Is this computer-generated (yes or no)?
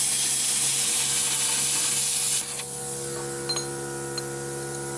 no